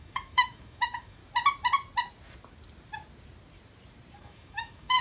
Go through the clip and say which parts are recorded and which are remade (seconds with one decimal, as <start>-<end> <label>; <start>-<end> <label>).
0.0-1.2 remade; 1.2-4.2 recorded; 4.2-5.0 remade